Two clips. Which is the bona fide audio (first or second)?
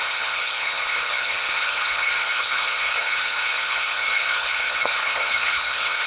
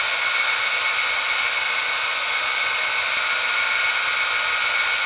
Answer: second